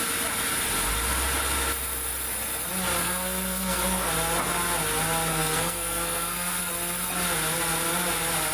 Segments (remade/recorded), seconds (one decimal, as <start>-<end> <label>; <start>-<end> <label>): 0.0-3.0 recorded; 3.0-4.1 remade; 4.1-5.3 recorded; 5.3-6.7 remade; 6.7-8.5 recorded